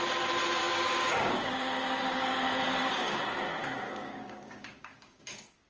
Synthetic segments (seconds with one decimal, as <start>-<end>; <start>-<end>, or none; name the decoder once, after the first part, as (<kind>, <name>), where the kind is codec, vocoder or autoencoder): 0.6-3.2 (codec, DAC); 3.6-5.7